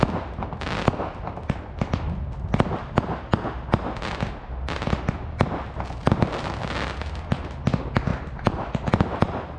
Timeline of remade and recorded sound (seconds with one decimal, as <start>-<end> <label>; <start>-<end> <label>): 0.0-8.1 recorded; 8.1-8.9 remade; 8.9-9.6 recorded